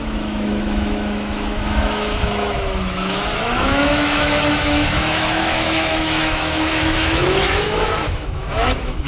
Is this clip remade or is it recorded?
remade